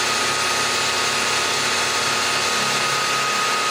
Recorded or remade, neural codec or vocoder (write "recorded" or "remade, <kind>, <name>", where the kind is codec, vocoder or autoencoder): recorded